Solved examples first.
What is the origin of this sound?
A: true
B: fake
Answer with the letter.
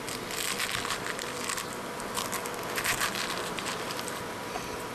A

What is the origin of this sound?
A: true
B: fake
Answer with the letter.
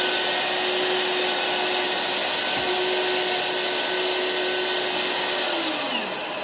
A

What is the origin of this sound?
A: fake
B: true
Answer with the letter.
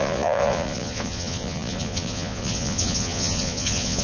A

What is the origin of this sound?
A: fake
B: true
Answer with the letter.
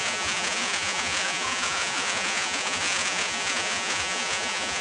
A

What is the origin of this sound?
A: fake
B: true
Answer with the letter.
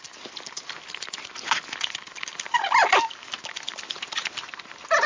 B